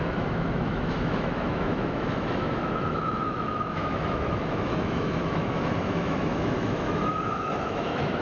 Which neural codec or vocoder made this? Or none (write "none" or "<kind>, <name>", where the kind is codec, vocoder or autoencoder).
autoencoder, DAC-VAE